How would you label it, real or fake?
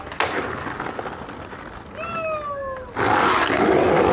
real